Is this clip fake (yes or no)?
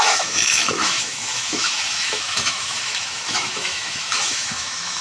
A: yes